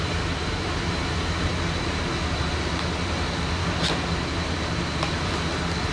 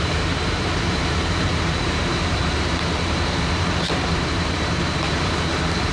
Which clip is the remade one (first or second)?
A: second